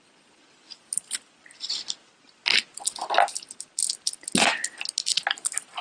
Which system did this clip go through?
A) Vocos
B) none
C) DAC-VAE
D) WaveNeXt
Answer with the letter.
B